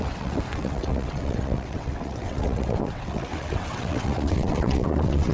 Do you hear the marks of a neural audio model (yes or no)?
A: yes